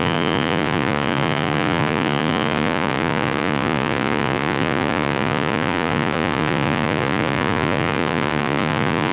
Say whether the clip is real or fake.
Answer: fake